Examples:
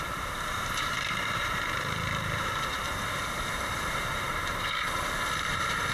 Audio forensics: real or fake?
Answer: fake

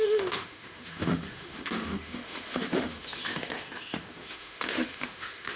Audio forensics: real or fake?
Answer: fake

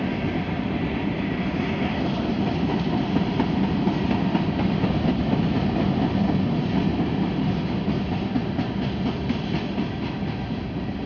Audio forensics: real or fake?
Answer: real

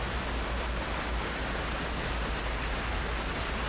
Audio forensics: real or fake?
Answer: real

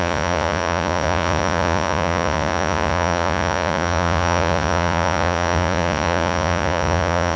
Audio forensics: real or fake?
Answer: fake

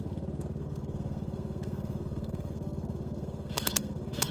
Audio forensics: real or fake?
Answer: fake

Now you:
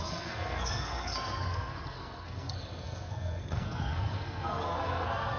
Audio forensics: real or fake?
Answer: fake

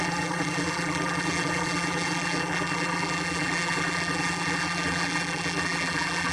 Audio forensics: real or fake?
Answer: fake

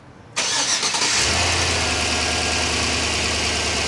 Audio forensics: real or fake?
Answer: real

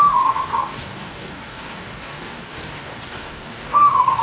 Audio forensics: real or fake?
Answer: fake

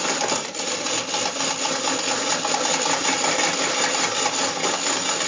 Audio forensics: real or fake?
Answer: real